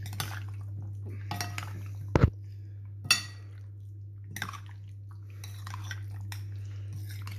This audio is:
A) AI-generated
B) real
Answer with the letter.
B